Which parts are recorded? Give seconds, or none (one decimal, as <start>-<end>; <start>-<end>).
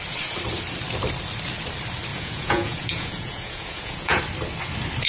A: 0.0-2.1; 4.2-5.1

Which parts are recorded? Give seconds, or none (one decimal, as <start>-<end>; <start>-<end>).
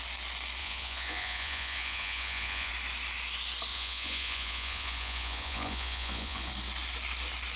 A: 0.0-0.6; 2.7-3.7; 6.5-7.6